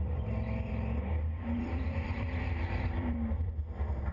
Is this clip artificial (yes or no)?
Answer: yes